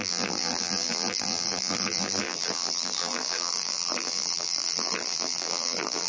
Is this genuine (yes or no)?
no